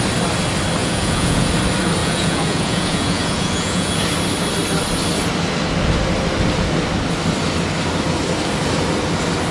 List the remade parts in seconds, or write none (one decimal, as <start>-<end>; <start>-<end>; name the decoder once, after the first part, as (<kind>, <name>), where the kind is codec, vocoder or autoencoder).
0.8-1.5 (vocoder, Vocos); 2.0-4.0